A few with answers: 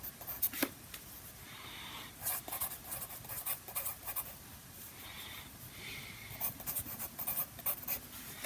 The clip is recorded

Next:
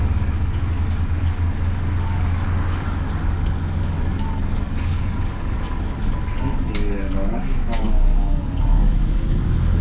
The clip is remade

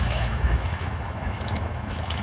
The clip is remade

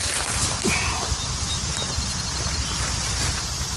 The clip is recorded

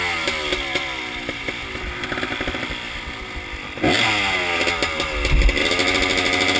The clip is recorded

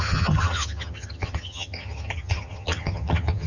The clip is remade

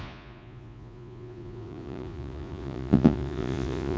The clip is remade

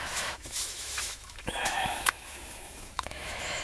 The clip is remade